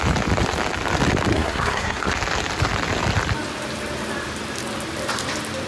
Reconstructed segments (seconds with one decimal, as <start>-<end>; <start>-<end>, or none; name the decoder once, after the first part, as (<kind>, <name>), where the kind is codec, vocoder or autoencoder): 1.3-2.1 (codec, SNAC)